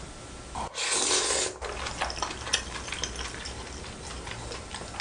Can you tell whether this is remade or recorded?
recorded